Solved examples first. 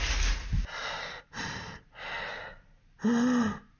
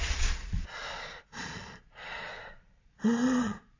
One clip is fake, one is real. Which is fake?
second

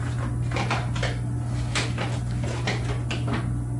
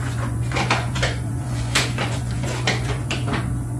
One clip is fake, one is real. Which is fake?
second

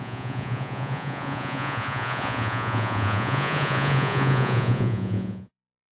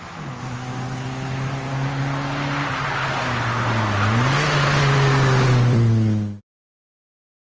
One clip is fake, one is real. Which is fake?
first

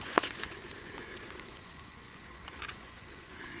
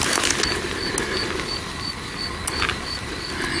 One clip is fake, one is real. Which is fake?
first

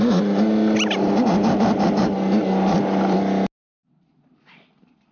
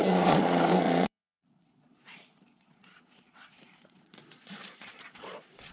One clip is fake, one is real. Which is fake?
second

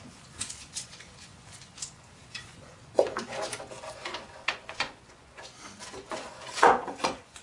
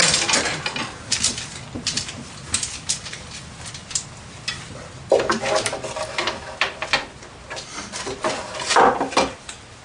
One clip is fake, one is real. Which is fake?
first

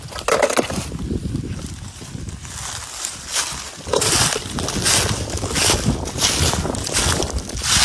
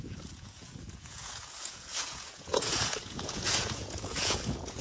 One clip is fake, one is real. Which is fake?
second